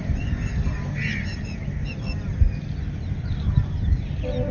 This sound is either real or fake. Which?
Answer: real